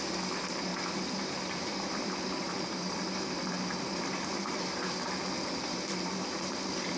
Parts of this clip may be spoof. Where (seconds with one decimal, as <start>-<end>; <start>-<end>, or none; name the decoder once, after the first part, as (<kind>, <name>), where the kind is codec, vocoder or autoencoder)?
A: 0.7-4.9 (vocoder, BigVGAN v2); 5.6-7.0